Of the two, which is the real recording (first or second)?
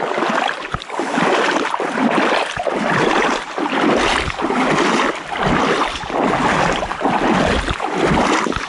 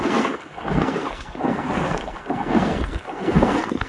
first